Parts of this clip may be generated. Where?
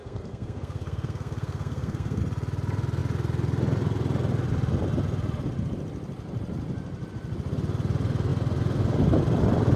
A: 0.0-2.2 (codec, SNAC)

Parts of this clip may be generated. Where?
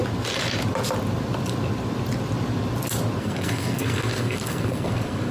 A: 3.2-5.3 (codec, SNAC)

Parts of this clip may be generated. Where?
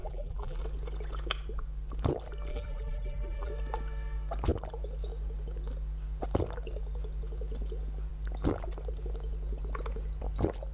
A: 0.0-0.6 (vocoder, BigVGAN v2); 2.5-3.5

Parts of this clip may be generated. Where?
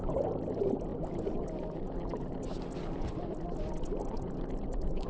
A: none